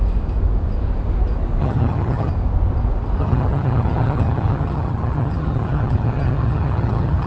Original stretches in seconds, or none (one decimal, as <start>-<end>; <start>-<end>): 0.0-1.6; 2.3-3.2